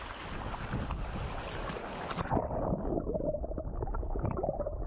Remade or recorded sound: recorded